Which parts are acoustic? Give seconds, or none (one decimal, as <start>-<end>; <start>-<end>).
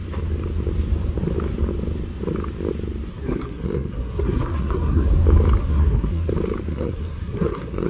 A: 0.0-3.1; 5.1-5.6; 6.3-6.7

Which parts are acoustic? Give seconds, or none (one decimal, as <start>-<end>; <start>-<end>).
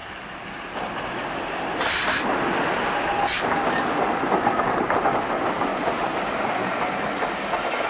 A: 0.0-7.9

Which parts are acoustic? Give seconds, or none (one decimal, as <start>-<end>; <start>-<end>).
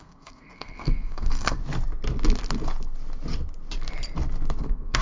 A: 1.6-4.6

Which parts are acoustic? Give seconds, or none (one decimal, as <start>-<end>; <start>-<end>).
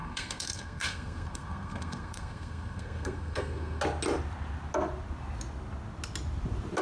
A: 3.8-6.8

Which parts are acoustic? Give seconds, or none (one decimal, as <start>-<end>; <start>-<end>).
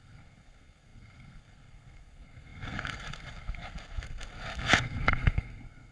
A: none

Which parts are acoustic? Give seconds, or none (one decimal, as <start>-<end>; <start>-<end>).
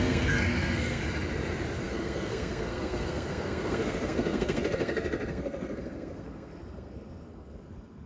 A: 1.0-1.8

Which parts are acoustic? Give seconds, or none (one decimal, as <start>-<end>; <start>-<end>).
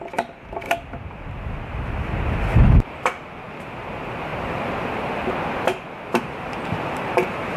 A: 0.0-7.6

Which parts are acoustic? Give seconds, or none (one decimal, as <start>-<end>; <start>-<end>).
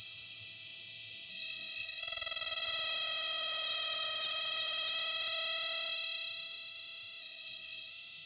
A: 0.0-1.3; 2.0-7.2; 7.9-8.3